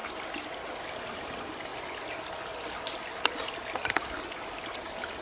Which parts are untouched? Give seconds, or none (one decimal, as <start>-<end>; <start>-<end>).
0.0-5.2